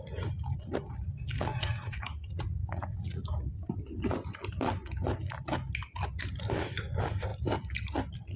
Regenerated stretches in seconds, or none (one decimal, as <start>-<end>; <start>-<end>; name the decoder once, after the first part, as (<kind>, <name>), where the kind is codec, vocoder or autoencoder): 1.5-3.2 (vocoder, Vocos)